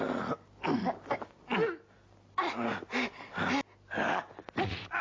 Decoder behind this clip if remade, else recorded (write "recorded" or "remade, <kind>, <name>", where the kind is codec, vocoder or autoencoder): recorded